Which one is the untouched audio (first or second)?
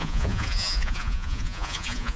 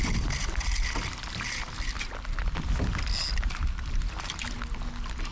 second